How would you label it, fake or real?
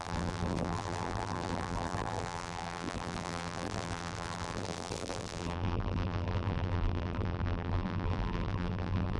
fake